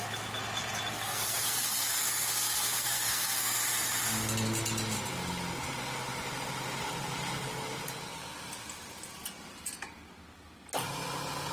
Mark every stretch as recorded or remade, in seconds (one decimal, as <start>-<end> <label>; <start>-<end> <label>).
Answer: 0.0-1.0 recorded; 1.0-3.7 remade; 3.7-11.5 recorded